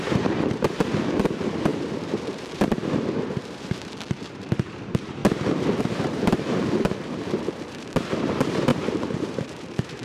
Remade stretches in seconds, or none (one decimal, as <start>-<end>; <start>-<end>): 0.0-5.2; 5.8-10.0